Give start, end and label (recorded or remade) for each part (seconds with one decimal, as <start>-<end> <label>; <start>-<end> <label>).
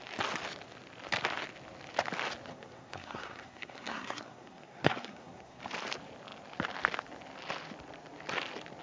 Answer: 0.0-2.5 recorded; 2.5-5.6 remade; 5.6-8.8 recorded